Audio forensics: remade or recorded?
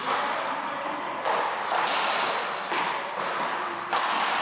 recorded